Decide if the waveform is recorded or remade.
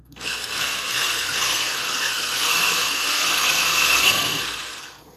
remade